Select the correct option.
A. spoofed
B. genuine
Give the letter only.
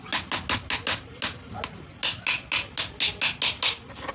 B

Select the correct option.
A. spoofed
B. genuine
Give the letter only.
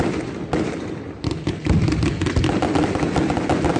B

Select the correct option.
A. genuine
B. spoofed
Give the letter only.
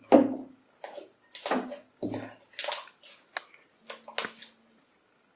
A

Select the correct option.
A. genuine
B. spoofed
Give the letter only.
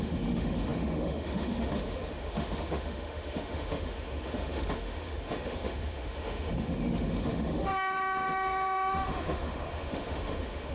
B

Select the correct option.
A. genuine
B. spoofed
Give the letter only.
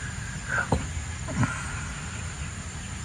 A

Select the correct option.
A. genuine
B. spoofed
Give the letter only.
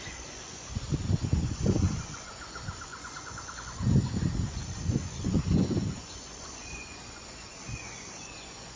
B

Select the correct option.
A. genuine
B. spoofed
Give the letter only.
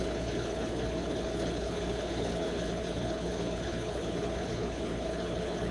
B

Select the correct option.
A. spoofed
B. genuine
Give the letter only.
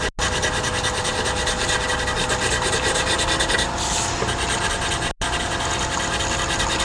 B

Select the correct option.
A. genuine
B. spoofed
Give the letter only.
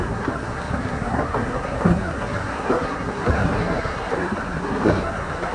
B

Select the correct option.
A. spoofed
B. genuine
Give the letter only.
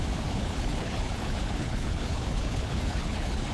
A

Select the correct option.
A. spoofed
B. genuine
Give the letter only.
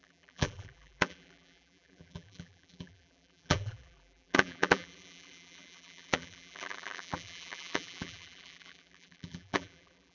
A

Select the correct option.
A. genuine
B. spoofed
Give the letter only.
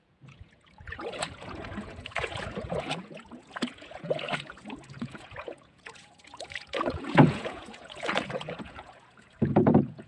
B